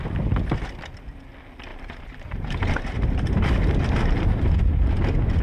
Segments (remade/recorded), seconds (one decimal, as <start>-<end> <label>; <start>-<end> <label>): 0.0-1.7 recorded; 1.7-4.9 remade; 4.9-5.4 recorded